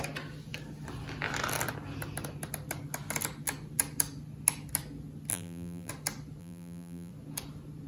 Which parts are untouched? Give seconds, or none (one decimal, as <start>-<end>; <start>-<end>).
0.0-5.3; 5.9-6.4; 7.1-7.9